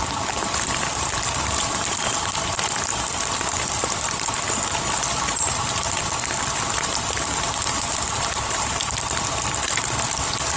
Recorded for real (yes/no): yes